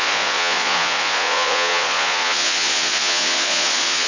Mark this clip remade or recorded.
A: remade